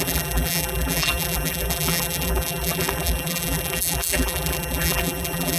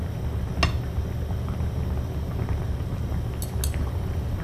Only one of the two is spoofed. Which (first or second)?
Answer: first